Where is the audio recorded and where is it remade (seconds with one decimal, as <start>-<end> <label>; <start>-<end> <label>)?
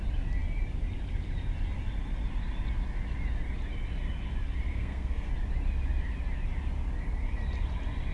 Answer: 0.0-4.7 recorded; 4.7-5.3 remade; 5.3-8.1 recorded